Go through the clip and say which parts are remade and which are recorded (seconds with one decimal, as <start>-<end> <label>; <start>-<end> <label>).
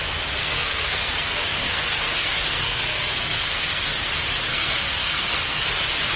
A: 0.0-0.4 recorded; 0.4-4.1 remade; 4.1-4.5 recorded; 4.5-5.7 remade; 5.7-6.2 recorded